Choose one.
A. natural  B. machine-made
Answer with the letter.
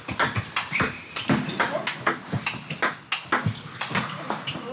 A